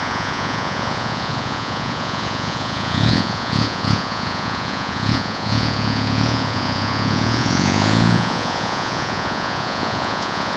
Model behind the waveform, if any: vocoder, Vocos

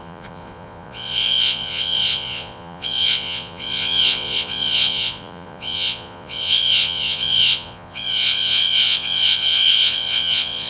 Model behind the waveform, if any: vocoder, Vocos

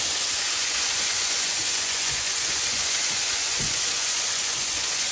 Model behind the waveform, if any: vocoder, Vocos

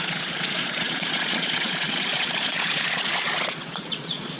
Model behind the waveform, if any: vocoder, Vocos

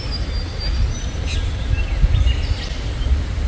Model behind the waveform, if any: none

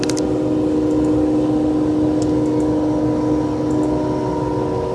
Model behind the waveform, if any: none